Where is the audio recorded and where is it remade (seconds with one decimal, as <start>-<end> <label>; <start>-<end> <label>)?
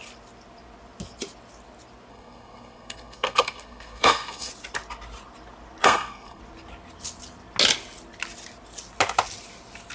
0.0-2.1 recorded; 2.1-4.5 remade; 4.5-5.8 recorded; 5.8-6.4 remade; 6.4-9.9 recorded